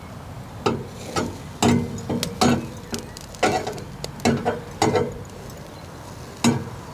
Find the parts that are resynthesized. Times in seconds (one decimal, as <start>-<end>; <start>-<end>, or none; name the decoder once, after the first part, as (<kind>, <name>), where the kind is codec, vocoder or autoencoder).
none